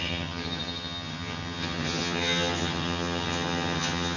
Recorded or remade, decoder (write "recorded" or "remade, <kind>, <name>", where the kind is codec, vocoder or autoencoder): remade, vocoder, HiFi-GAN